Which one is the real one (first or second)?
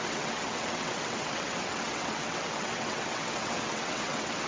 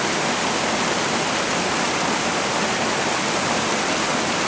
second